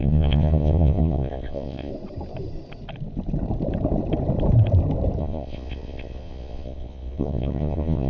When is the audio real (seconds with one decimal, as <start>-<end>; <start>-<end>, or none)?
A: 1.9-5.2